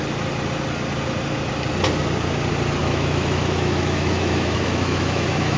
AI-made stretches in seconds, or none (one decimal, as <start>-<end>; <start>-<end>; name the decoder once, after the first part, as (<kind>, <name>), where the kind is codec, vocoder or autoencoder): 2.8-5.6 (autoencoder, DAC-VAE)